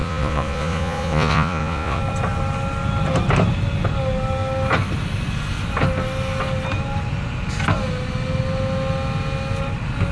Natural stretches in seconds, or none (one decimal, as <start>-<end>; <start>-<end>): 2.0-10.1